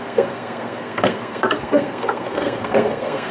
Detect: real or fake fake